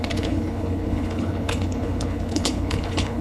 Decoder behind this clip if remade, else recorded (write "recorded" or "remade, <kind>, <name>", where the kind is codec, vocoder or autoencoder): remade, codec, HILCodec